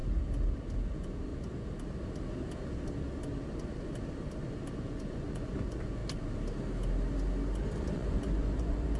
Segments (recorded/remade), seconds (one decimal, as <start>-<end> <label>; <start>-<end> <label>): 0.0-0.9 recorded; 0.9-1.3 remade; 1.3-4.8 recorded; 4.8-6.0 remade; 6.0-7.8 recorded; 7.8-9.0 remade